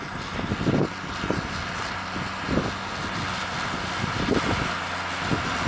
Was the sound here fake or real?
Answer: real